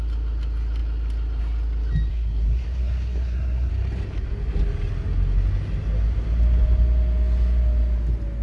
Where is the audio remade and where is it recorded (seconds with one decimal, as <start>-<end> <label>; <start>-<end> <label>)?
0.0-2.1 recorded; 2.1-3.7 remade; 3.7-8.4 recorded